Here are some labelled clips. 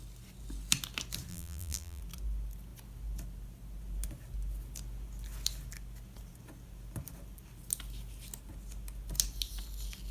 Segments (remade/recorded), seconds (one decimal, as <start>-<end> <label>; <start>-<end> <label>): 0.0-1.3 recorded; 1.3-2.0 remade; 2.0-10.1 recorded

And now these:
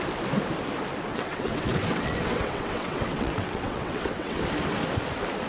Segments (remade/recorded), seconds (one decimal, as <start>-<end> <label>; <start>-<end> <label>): 0.0-1.1 recorded; 1.1-4.4 remade; 4.4-5.5 recorded

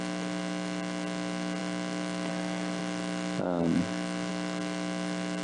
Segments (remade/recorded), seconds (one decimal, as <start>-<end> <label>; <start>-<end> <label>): 0.0-5.4 recorded

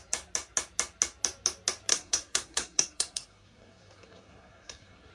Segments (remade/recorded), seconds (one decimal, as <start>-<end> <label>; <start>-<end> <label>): 0.0-1.9 recorded; 1.9-5.1 remade